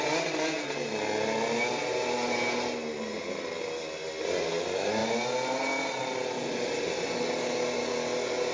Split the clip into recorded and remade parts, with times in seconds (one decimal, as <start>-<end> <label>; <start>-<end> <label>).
0.0-8.5 recorded